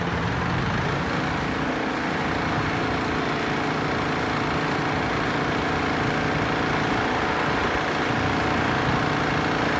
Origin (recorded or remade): recorded